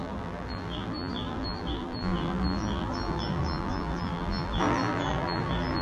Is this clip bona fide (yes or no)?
no